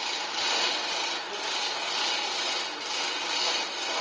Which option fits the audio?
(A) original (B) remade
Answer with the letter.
A